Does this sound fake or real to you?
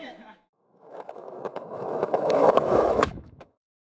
fake